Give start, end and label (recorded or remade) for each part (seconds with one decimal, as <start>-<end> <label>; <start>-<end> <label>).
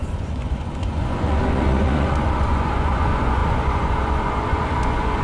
0.0-5.2 remade